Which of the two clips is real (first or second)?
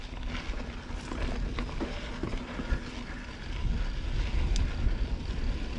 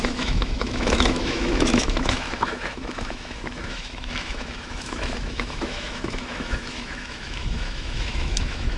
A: first